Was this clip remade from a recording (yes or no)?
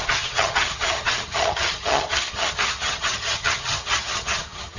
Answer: yes